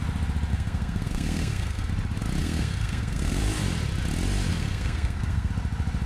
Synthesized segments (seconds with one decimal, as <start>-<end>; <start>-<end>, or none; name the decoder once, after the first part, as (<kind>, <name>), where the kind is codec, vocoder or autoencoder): 0.5-1.9 (codec, SNAC); 2.4-3.4; 4.5-5.5

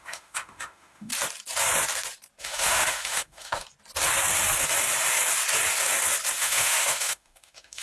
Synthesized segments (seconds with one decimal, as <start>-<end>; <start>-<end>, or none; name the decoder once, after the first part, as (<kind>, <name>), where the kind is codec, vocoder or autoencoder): 0.0-1.1 (autoencoder, DAC-VAE); 2.4-3.6; 6.4-7.8